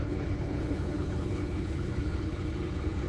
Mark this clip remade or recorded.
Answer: remade